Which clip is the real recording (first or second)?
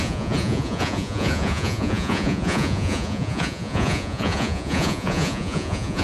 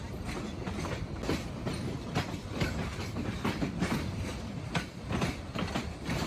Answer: second